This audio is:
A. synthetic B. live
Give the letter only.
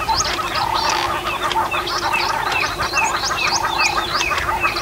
B